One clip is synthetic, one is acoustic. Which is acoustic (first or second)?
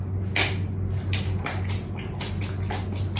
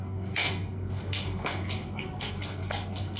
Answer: first